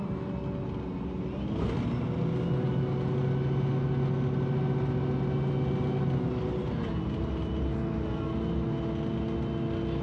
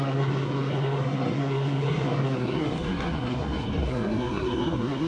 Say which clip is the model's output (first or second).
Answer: second